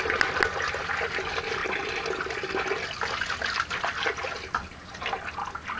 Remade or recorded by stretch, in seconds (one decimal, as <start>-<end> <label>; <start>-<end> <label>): 0.0-5.8 recorded